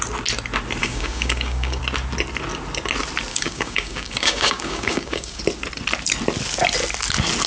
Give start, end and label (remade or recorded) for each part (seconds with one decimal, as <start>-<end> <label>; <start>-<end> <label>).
0.0-0.8 recorded; 0.8-1.8 remade; 1.8-3.3 recorded; 3.3-5.4 remade; 5.4-7.5 recorded